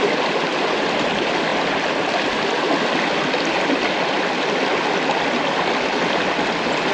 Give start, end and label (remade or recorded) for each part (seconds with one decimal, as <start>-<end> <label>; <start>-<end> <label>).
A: 0.0-6.9 recorded